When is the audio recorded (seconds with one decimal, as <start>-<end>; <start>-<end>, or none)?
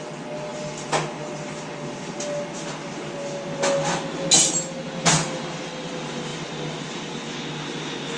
0.0-8.2